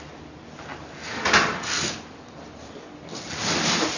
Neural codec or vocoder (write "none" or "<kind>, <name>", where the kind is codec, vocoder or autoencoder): none